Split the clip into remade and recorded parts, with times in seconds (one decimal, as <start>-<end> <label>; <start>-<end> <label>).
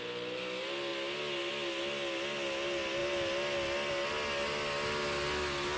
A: 0.0-5.8 recorded